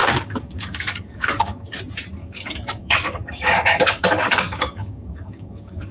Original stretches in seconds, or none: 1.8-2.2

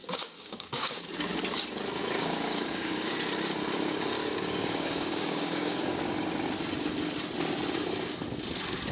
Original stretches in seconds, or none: 1.0-2.0; 3.1-4.2; 6.0-8.9

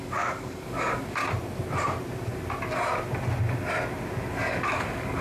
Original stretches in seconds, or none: 1.2-4.3

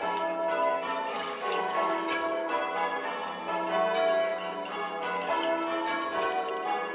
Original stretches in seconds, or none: 0.0-1.1; 2.5-6.9

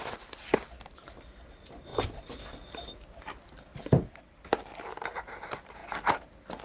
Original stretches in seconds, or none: 0.0-6.6

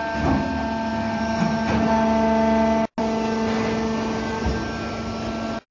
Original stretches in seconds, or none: 0.0-5.7

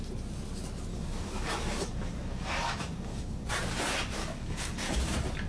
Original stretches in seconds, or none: 0.0-0.9; 3.5-4.2; 5.0-5.5